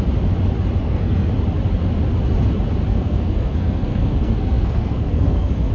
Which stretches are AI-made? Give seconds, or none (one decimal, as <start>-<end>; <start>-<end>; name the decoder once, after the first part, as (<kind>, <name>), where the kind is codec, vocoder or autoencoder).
0.8-1.3 (codec, SNAC); 2.9-5.7